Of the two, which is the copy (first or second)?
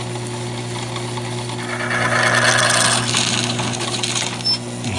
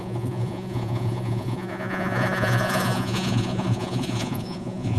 second